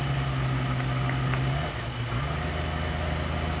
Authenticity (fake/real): real